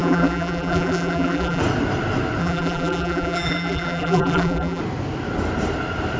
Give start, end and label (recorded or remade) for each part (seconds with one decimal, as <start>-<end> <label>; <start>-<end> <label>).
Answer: 0.0-1.6 remade; 1.6-2.4 recorded; 2.4-4.8 remade; 4.8-6.2 recorded